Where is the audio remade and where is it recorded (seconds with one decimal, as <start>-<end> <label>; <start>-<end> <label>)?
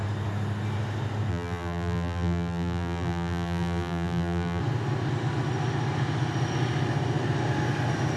0.0-1.3 recorded; 1.3-4.6 remade; 4.6-8.2 recorded